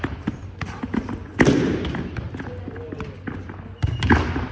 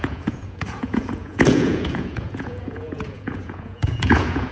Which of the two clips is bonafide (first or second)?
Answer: first